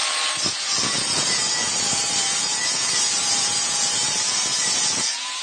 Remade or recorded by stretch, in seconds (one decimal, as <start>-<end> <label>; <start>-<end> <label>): 0.0-0.5 recorded; 0.5-5.4 remade